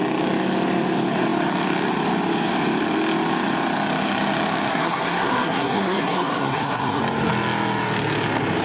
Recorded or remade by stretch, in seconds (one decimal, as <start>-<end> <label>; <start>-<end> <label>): 0.0-4.7 recorded; 4.7-7.0 remade; 7.0-8.6 recorded